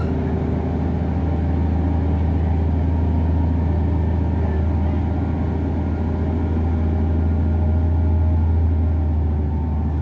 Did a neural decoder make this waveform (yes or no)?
no